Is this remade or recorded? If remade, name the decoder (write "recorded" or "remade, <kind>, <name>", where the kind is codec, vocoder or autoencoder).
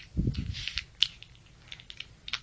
recorded